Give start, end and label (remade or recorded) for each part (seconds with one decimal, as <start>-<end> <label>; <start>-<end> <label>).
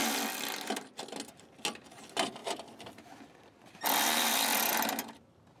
0.0-5.6 recorded